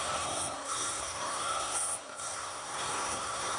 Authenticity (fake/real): fake